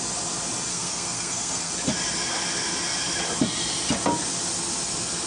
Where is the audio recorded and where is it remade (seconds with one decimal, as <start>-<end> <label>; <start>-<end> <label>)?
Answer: 0.0-0.7 recorded; 0.7-1.7 remade; 1.7-5.3 recorded